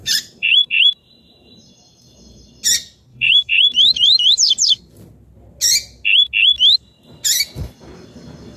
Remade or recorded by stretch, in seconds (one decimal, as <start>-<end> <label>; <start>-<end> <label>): 0.0-2.5 remade; 2.5-3.1 recorded; 3.1-4.8 remade; 4.8-8.6 recorded